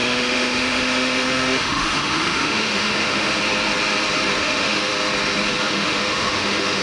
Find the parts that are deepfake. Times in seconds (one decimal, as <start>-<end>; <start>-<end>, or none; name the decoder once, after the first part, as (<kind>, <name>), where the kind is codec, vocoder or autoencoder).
0.0-3.4 (autoencoder, DAC-VAE); 4.4-4.9; 5.6-6.8